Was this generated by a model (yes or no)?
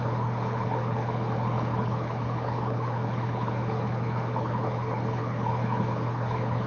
yes